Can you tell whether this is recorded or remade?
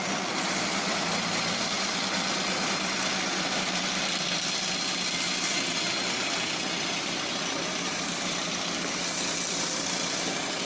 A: recorded